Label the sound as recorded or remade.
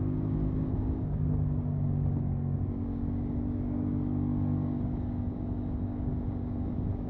remade